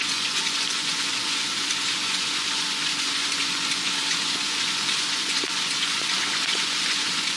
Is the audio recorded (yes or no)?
no